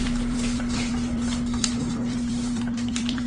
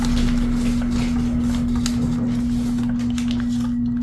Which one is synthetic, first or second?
first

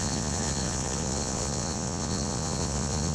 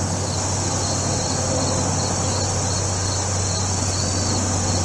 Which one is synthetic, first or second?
first